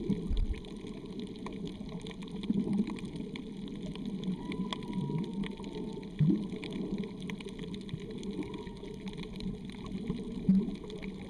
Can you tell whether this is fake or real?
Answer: real